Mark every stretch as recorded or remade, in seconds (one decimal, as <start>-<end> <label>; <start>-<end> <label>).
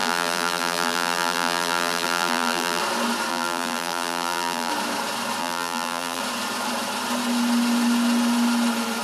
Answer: 0.0-2.8 remade; 2.8-3.3 recorded; 3.3-4.7 remade; 4.7-5.4 recorded; 5.4-6.2 remade; 6.2-9.0 recorded